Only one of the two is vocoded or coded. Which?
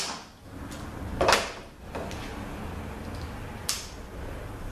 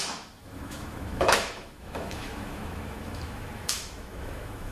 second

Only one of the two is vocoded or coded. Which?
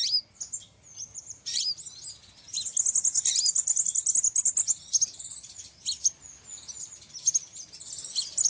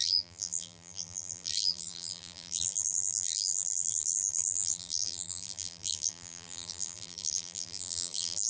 second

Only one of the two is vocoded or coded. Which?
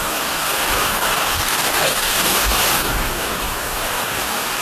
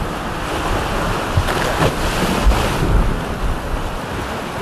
first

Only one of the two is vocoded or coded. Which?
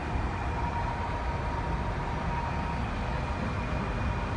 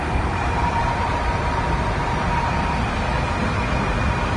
second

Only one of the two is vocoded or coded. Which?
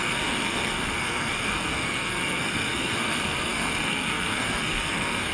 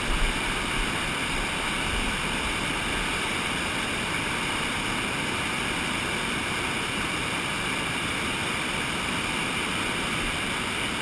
first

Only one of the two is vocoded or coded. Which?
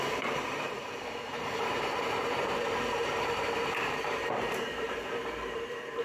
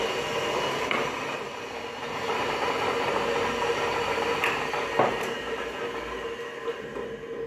first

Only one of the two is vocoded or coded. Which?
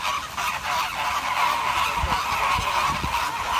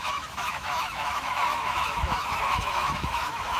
second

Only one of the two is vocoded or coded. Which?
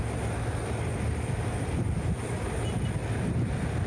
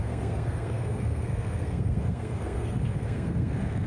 second